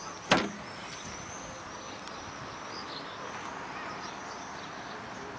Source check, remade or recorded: recorded